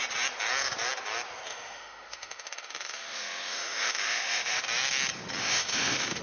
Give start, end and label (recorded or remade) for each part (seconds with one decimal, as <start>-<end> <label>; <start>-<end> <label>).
0.0-1.5 recorded; 1.5-4.6 remade; 4.6-5.4 recorded; 5.4-6.2 remade